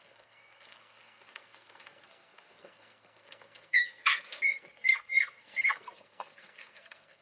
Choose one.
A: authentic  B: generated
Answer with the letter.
B